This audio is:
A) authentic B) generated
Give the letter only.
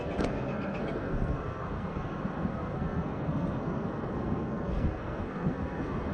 B